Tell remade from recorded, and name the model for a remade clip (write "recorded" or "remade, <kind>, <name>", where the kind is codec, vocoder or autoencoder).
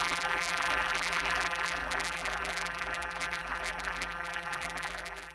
remade, vocoder, BigVGAN v2